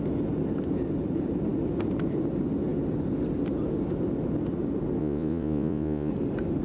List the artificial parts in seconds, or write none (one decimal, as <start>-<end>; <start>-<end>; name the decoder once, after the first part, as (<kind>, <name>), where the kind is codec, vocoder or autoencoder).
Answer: 5.0-6.1 (vocoder, Vocos)